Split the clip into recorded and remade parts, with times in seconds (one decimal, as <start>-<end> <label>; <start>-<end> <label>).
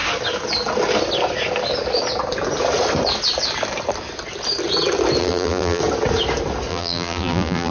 0.0-5.2 recorded; 5.2-5.8 remade; 5.8-6.7 recorded; 6.7-7.7 remade